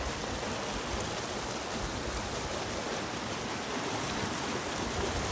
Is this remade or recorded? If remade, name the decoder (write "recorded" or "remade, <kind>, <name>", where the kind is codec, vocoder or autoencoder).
recorded